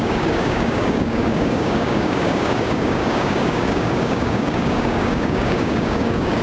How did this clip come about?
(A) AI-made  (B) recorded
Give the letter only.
A